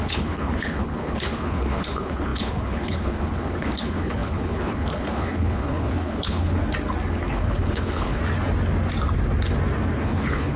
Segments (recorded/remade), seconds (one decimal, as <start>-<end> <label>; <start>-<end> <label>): 0.0-6.6 remade; 6.6-7.3 recorded; 7.3-8.2 remade; 8.2-10.0 recorded; 10.0-10.6 remade